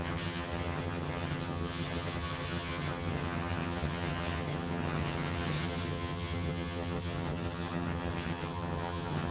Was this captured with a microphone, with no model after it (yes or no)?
no